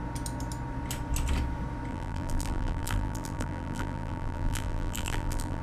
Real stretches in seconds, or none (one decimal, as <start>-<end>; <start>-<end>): 0.0-1.9